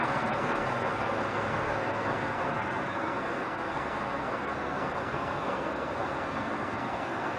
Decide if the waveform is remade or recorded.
remade